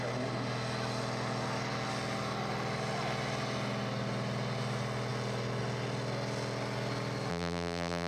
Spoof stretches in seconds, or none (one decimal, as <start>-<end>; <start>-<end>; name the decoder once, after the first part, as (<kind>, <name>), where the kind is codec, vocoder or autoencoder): 7.3-8.1 (vocoder, BigVGAN v2)